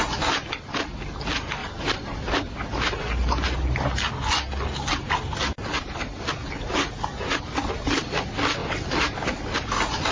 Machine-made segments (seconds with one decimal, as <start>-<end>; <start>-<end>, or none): 1.6-2.8; 8.6-10.1